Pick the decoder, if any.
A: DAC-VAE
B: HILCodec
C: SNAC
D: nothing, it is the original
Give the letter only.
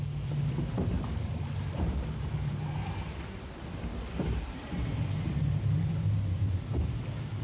D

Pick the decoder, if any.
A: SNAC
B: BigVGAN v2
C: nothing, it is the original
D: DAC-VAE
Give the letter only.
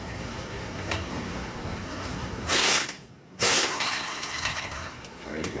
A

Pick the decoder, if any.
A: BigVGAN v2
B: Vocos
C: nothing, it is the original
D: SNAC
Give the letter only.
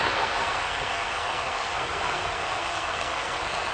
D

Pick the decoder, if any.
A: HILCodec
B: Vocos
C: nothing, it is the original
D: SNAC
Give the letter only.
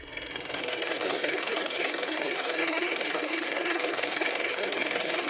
D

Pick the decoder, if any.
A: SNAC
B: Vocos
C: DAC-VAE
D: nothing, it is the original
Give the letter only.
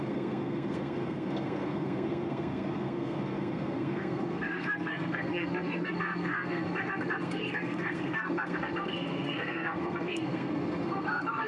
A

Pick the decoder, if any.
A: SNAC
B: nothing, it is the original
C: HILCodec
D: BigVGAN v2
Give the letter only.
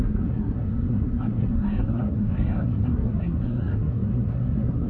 A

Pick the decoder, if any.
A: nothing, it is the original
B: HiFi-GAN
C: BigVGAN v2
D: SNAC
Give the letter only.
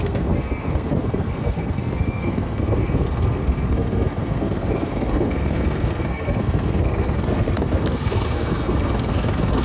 D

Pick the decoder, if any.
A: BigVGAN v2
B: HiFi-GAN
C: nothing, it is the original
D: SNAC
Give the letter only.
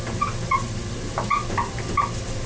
C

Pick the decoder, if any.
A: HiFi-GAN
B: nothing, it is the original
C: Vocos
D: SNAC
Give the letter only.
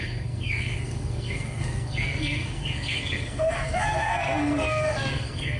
D